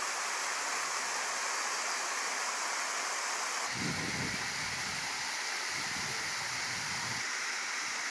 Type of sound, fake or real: real